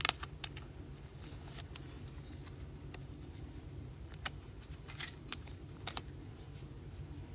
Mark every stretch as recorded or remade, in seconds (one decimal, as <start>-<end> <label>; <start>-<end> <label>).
0.0-3.0 recorded; 3.0-6.3 remade; 6.3-7.3 recorded